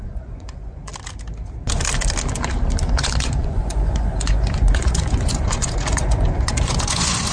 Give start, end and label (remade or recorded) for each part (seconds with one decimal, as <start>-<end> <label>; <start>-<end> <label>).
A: 0.0-0.9 remade; 0.9-2.9 recorded; 2.9-7.3 remade